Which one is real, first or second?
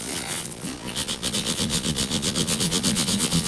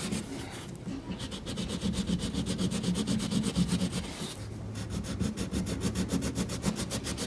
second